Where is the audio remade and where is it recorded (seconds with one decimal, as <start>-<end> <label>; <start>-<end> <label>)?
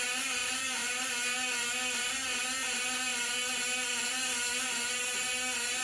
0.0-0.4 recorded; 0.4-1.1 remade; 1.1-5.8 recorded